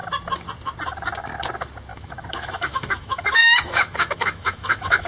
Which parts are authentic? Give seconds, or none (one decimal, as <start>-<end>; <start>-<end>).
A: 0.0-1.9

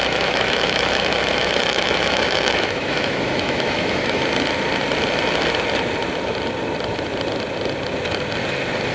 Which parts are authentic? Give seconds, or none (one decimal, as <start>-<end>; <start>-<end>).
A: 4.2-8.9

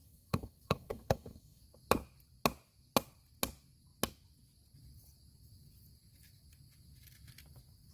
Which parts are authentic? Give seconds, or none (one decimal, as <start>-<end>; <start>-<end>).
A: 1.6-7.9

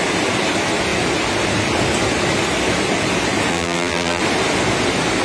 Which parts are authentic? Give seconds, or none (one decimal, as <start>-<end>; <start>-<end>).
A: 0.0-3.5; 4.2-5.2

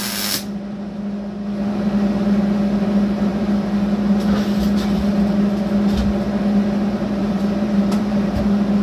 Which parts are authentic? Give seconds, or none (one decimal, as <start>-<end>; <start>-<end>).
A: 0.0-7.2; 8.4-8.8

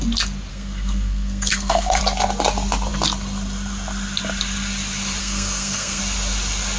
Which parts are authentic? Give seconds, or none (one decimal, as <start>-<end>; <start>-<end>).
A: 0.0-0.5; 2.0-5.2; 6.0-6.8

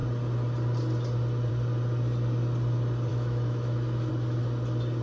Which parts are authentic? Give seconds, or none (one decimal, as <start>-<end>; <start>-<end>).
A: 0.0-3.1; 4.1-5.0